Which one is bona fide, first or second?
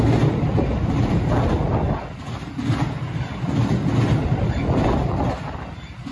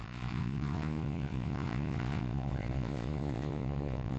first